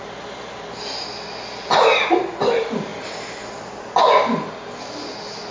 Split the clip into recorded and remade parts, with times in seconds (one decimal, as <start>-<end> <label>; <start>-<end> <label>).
0.0-5.5 recorded